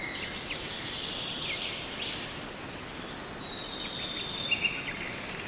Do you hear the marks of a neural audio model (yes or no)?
yes